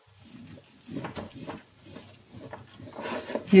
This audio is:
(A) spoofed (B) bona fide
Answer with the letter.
B